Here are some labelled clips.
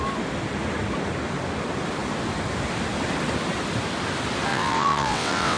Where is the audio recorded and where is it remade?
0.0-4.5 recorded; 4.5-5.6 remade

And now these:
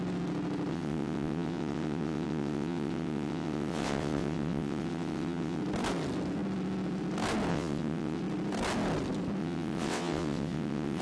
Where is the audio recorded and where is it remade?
0.0-0.7 recorded; 0.7-5.6 remade; 5.6-7.5 recorded; 7.5-8.2 remade; 8.2-9.4 recorded; 9.4-11.0 remade

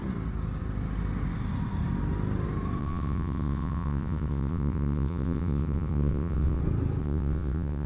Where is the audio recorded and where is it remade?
0.0-2.8 recorded; 2.8-6.6 remade; 6.6-7.0 recorded; 7.0-7.9 remade